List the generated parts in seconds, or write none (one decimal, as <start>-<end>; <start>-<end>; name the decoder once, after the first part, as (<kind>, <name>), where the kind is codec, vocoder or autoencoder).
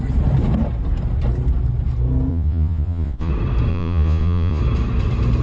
2.3-3.3 (vocoder, Vocos); 3.7-4.6